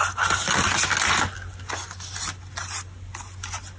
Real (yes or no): yes